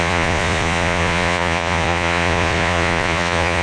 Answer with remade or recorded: remade